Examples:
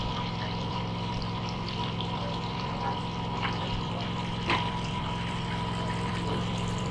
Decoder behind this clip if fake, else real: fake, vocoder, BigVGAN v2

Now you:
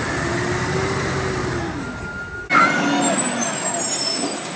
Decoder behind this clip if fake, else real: real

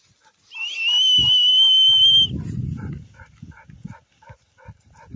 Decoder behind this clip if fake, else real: real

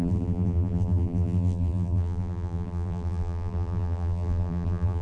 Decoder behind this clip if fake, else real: fake, vocoder, BigVGAN v2